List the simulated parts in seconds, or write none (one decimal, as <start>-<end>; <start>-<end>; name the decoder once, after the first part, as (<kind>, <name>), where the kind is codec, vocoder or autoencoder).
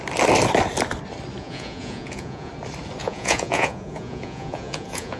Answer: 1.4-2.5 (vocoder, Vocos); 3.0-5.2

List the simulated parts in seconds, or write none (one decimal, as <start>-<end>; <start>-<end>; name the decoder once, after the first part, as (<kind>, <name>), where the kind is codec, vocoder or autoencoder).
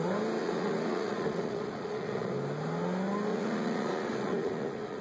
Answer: 0.4-2.3 (vocoder, Vocos); 3.3-5.0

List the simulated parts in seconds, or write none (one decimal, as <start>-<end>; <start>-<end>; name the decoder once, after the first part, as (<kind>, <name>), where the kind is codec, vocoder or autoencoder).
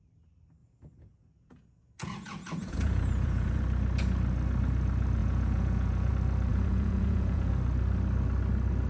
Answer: 0.6-3.6 (vocoder, Vocos); 5.2-6.1; 6.5-7.5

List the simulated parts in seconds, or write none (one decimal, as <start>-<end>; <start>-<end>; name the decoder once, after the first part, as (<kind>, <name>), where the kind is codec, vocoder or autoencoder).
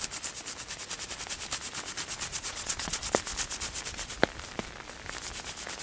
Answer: 2.3-3.0 (vocoder, Vocos)